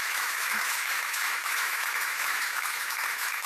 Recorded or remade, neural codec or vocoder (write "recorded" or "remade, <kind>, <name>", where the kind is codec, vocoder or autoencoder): remade, autoencoder, DAC-VAE